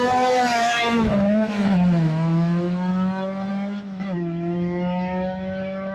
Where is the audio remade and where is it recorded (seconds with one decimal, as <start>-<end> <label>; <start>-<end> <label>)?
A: 0.0-2.9 remade; 2.9-3.5 recorded; 3.5-5.9 remade